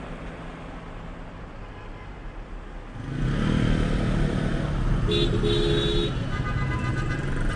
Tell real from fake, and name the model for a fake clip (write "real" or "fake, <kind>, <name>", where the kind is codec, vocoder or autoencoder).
real